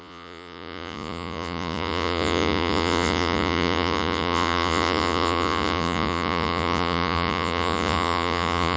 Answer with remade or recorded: remade